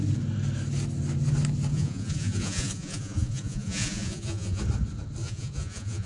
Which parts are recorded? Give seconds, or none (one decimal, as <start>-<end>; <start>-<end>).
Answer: 0.0-1.7; 4.6-5.2